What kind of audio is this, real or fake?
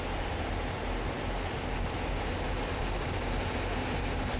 real